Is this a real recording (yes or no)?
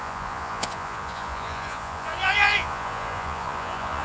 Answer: no